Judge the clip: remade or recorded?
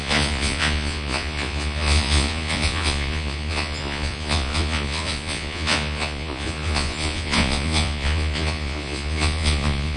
remade